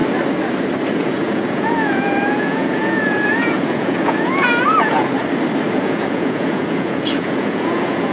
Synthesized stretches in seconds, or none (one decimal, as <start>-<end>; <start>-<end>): 0.9-5.2; 5.7-8.1